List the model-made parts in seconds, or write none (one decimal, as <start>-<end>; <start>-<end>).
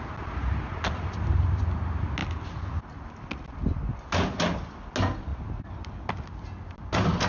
5.3-5.8